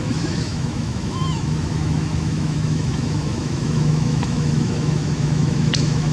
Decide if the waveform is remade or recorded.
remade